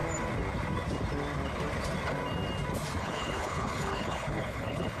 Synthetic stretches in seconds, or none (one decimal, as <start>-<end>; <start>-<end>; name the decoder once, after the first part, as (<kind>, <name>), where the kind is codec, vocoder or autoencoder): 3.0-5.0 (codec, HILCodec)